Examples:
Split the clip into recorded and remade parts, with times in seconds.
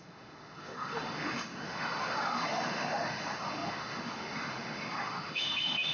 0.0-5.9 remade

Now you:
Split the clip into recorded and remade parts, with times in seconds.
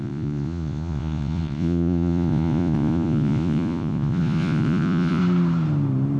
0.0-5.2 remade; 5.2-6.2 recorded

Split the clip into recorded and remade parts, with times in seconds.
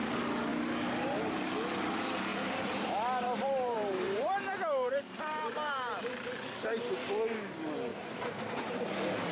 0.0-2.3 recorded; 2.3-6.3 remade; 6.3-7.9 recorded; 7.9-8.9 remade; 8.9-9.3 recorded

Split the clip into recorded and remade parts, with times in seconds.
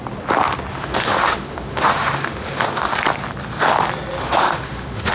0.0-0.7 recorded; 0.7-3.0 remade; 3.0-4.2 recorded; 4.2-5.1 remade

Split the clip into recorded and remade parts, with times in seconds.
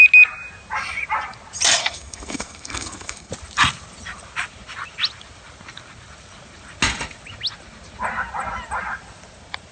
0.0-1.8 recorded; 1.8-3.3 remade; 3.3-9.7 recorded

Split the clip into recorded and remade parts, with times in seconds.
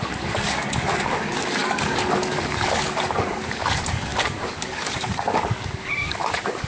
0.0-6.7 remade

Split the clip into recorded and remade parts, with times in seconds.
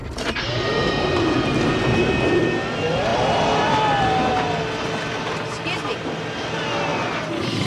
0.0-7.7 recorded